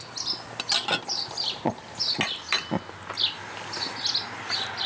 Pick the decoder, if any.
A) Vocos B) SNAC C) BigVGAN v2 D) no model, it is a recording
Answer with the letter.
D